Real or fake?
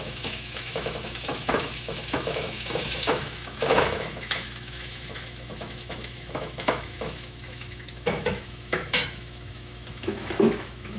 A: fake